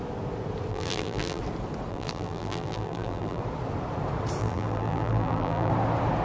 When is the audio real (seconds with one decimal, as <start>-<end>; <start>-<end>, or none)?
0.0-0.7; 1.4-1.9; 3.4-4.4; 5.7-6.2